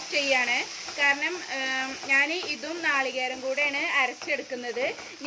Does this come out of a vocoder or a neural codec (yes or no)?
no